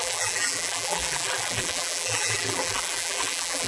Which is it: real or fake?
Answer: fake